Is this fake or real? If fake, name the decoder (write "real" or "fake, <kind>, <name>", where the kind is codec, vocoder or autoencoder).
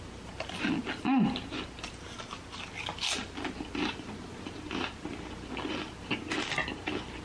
real